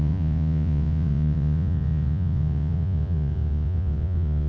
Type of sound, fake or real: fake